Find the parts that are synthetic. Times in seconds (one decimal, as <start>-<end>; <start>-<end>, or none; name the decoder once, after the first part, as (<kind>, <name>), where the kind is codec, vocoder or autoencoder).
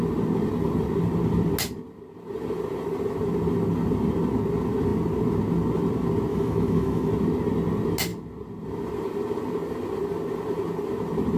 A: 6.3-7.1 (autoencoder, DAC-VAE)